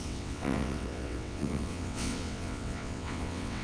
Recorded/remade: remade